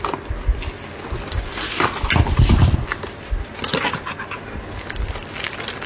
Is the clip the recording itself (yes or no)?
yes